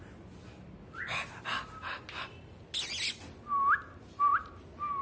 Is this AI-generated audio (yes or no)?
no